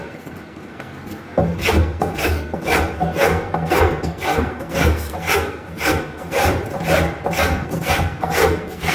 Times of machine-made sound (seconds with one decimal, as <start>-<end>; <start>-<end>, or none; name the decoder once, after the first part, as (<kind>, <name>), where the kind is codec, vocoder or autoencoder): 0.0-6.5 (codec, SNAC); 7.3-8.9